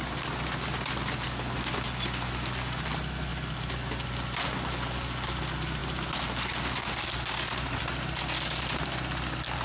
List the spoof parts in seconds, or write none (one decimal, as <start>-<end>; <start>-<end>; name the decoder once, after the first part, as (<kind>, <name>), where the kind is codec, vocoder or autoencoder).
none